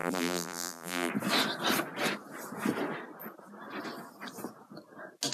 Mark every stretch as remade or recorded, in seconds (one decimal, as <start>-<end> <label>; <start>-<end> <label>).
0.0-1.1 remade; 1.1-5.3 recorded